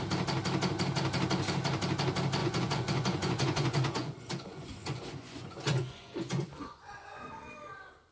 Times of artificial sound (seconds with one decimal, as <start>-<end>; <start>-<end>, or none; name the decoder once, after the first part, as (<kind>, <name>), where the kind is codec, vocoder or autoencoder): 2.4-7.3 (vocoder, Vocos)